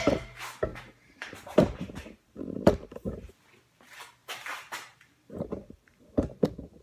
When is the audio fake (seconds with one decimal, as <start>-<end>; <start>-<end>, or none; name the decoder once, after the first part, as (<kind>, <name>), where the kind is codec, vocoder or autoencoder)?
0.7-3.3 (vocoder, BigVGAN v2); 4.2-6.0